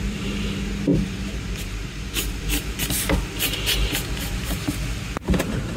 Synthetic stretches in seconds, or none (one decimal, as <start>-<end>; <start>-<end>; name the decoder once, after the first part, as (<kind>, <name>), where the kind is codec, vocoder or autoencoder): 0.0-5.8 (vocoder, BigVGAN v2)